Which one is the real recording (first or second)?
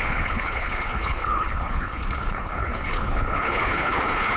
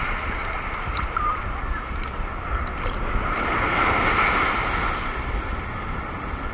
second